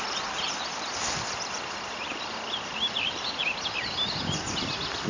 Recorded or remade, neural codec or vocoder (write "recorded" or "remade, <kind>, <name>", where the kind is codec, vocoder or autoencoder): recorded